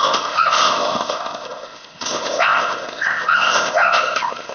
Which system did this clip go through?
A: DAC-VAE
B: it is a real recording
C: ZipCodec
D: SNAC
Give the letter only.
C